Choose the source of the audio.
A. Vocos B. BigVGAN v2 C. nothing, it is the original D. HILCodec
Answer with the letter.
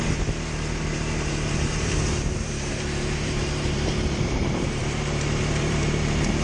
B